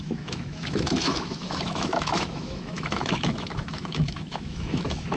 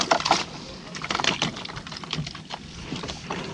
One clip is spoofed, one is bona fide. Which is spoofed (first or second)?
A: first